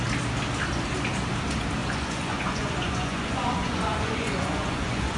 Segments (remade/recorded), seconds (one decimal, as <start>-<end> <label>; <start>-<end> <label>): 0.0-1.8 recorded; 1.8-5.2 remade